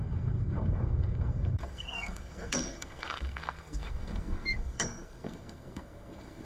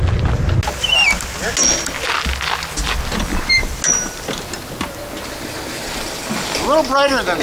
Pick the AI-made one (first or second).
first